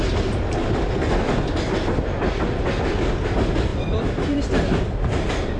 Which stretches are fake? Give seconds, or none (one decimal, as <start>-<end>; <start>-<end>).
none